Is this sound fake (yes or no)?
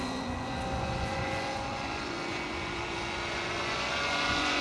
yes